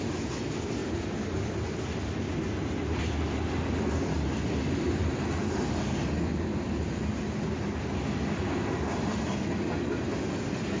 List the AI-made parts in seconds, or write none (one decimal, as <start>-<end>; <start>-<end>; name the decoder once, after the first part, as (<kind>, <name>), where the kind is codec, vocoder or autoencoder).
none